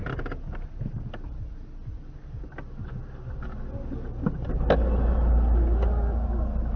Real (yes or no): yes